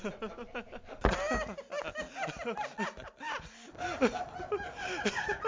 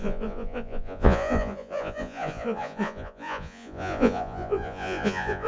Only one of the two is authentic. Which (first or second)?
first